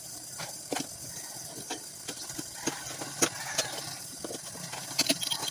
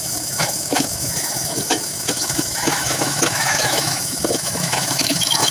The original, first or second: first